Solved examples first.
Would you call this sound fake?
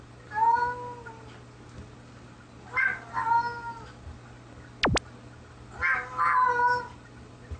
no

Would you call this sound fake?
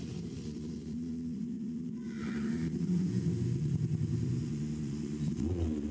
yes